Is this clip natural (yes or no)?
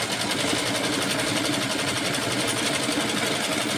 yes